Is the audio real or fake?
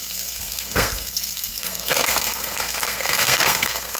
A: fake